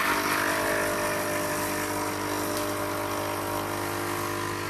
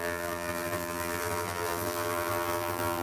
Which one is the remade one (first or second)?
second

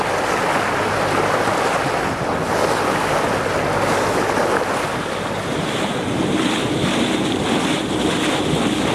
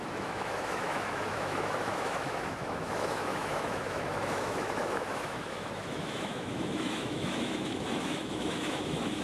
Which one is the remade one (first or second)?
second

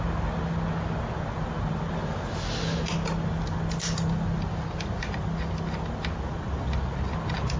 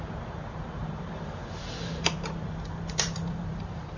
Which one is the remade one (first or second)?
second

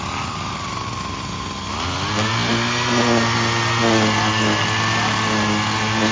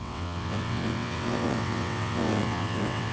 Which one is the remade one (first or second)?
second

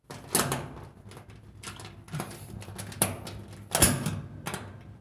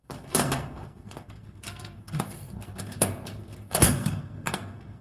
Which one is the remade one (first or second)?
second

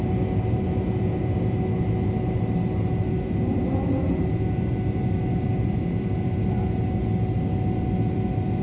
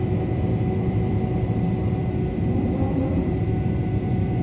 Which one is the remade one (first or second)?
second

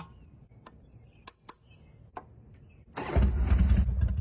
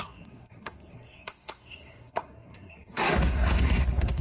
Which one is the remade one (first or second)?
second